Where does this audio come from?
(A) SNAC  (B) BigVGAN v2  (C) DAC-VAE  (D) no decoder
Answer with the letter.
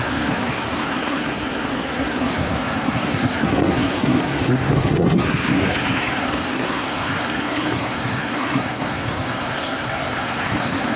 A